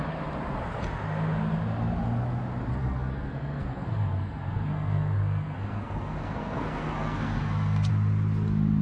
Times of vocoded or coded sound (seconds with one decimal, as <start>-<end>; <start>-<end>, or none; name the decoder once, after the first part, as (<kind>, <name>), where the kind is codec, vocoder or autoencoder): 2.8-7.9 (codec, SNAC)